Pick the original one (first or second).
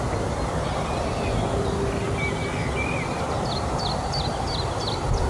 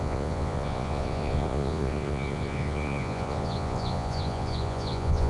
first